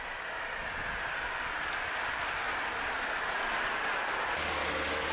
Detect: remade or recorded recorded